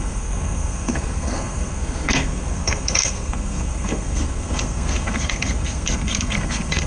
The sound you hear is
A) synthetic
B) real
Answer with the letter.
A